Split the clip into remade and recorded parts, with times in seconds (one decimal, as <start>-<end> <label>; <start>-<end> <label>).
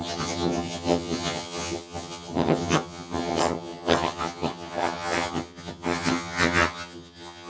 0.0-7.5 remade